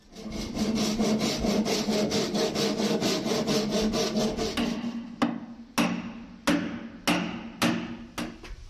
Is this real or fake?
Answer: real